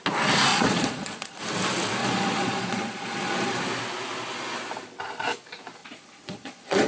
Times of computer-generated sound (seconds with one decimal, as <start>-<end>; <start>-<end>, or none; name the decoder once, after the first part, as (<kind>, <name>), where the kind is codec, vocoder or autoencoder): 0.5-1.4 (vocoder, Vocos); 2.0-3.6; 5.8-6.9